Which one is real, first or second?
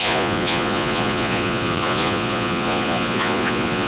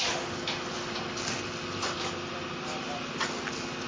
second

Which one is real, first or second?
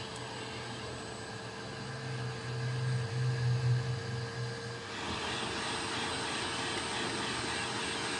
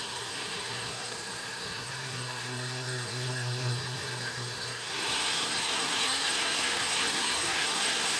first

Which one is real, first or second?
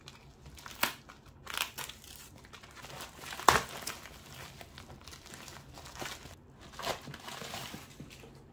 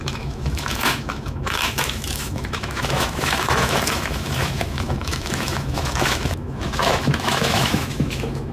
first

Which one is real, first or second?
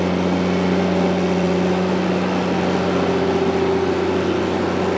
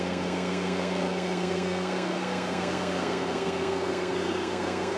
first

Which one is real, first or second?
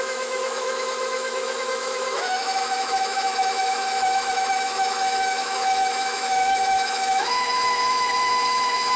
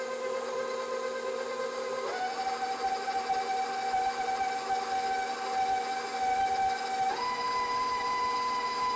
second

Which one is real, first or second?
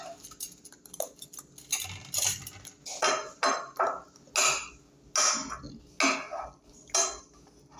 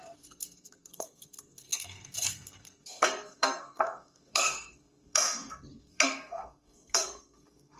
first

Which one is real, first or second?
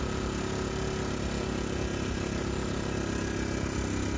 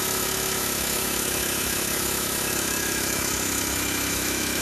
first